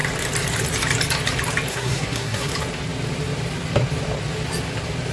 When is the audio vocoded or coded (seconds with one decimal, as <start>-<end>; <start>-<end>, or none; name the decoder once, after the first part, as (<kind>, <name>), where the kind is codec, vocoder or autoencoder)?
1.7-2.5 (codec, SNAC)